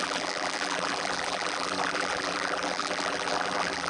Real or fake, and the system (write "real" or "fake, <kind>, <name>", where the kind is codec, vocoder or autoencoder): fake, vocoder, BigVGAN v2